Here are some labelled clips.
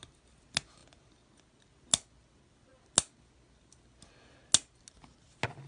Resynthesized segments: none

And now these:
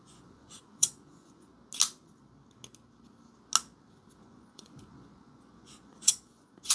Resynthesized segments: 0.0-1.5 (vocoder, Vocos); 4.2-6.7

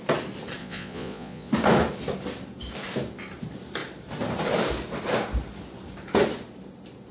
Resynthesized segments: 0.6-1.5 (vocoder, Vocos)

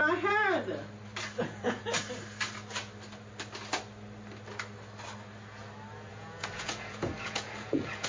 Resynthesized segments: 1.4-1.8 (vocoder, Vocos); 6.1-8.1

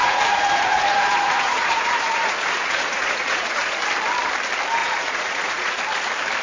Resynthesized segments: 0.0-3.8 (vocoder, Vocos); 4.8-5.8

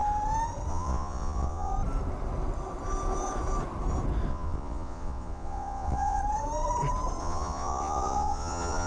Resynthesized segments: 0.7-1.7 (vocoder, Vocos); 4.3-6.2; 7.2-8.9

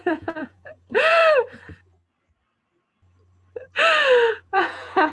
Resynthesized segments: 0.0-1.2 (vocoder, Vocos); 4.3-5.1